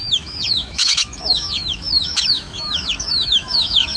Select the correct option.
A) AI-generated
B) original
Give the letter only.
A